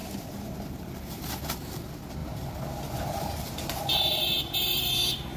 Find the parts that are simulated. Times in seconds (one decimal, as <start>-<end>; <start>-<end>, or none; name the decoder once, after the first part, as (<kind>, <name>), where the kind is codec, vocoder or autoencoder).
0.0-1.2 (vocoder, BigVGAN v2); 2.2-4.9